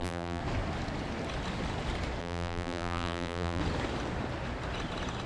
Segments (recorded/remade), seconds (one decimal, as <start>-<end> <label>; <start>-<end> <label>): 0.0-0.4 remade; 0.4-2.2 recorded; 2.2-3.6 remade; 3.6-5.3 recorded